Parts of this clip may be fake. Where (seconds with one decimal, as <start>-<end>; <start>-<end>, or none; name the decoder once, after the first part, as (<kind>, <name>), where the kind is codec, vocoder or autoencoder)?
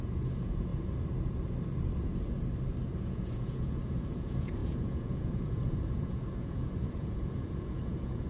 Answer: 0.0-0.7 (vocoder, Vocos); 3.0-8.3